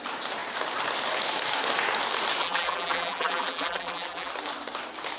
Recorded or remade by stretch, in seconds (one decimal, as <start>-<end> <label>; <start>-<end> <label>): 0.0-2.4 recorded; 2.4-4.3 remade; 4.3-5.2 recorded